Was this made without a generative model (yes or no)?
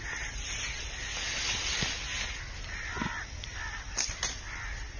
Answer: yes